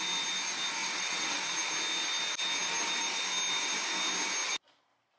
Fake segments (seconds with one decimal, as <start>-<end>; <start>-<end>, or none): 0.8-1.4